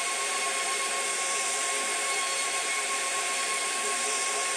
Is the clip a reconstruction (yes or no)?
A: yes